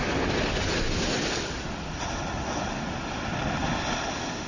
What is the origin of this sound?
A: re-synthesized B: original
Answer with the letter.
B